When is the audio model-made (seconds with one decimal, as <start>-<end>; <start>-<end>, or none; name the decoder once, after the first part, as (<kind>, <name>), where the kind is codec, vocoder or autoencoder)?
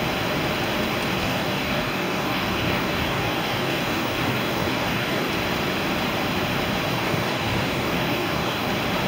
1.2-5.3 (codec, DAC); 6.9-8.7